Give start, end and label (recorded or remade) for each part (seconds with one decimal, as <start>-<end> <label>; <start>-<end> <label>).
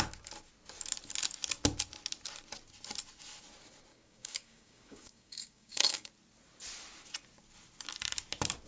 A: 0.0-3.9 recorded; 3.9-6.1 remade; 6.1-8.7 recorded